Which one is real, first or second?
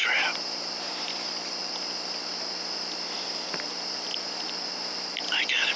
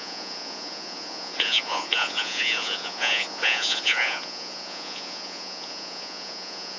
first